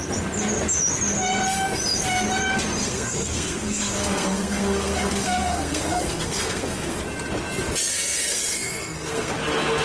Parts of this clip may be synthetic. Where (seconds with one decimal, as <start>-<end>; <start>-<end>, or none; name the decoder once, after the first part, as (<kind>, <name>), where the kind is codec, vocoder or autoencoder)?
2.8-7.0 (codec, SNAC); 7.9-9.3